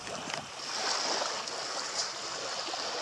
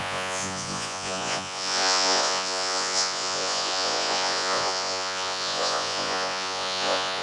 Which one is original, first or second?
first